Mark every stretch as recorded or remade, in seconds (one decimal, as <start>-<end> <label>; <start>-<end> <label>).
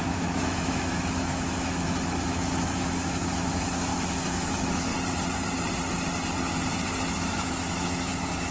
0.0-4.9 remade; 4.9-7.1 recorded; 7.1-8.5 remade